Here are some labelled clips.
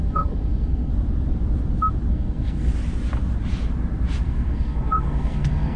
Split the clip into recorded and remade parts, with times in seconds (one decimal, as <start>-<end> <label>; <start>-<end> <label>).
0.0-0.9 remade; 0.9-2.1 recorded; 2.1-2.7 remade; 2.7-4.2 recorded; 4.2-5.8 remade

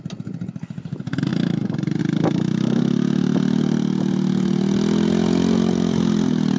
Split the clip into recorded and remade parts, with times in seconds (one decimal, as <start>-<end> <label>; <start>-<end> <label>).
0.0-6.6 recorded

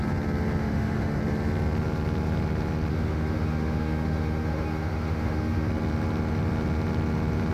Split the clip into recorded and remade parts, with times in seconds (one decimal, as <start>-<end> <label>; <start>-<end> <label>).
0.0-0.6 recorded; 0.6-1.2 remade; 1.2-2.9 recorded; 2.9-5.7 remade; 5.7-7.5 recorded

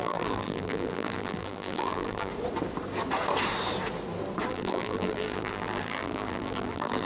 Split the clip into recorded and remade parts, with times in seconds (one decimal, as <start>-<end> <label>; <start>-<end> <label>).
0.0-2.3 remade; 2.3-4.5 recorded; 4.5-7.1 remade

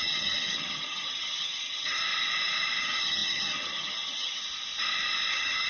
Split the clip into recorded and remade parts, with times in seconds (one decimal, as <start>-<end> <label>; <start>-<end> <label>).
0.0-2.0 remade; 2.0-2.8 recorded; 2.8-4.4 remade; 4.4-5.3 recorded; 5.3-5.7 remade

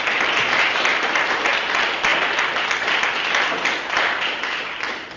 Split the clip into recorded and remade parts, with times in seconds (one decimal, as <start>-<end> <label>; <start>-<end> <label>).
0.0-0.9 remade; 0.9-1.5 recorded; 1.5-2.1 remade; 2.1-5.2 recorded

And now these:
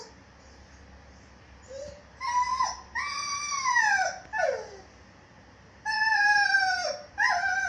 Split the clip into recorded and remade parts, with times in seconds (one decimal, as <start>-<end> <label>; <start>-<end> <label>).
0.0-7.7 recorded